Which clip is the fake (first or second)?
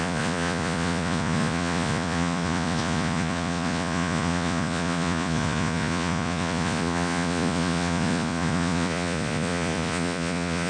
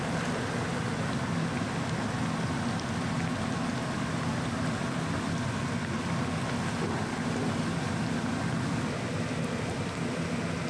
first